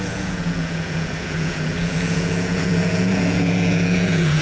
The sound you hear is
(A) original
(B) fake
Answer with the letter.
B